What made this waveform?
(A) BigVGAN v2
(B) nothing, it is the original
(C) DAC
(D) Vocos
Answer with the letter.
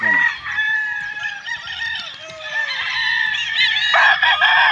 A